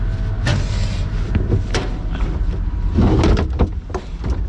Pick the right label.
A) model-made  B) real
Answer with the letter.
B